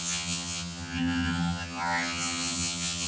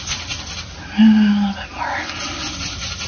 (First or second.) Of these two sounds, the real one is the second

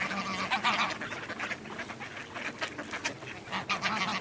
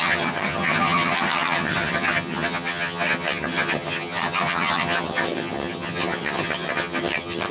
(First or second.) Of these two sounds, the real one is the first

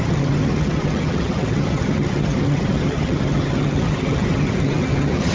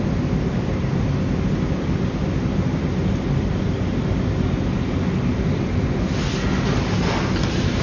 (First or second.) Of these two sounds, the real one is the second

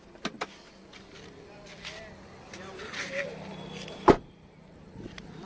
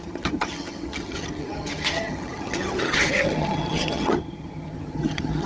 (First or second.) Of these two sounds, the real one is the first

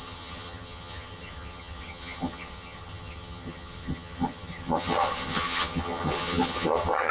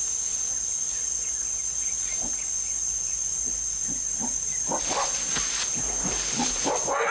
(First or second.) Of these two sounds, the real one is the second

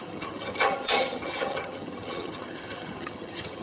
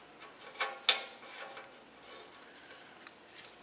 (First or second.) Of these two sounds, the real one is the second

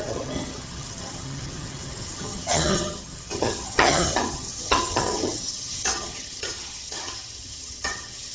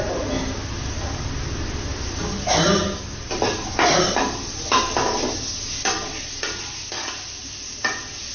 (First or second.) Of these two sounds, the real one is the second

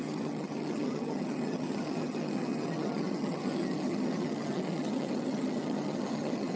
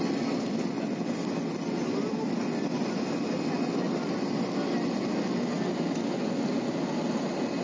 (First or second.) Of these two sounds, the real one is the second